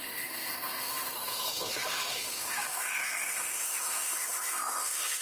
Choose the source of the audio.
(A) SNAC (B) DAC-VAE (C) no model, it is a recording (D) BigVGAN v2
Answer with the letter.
B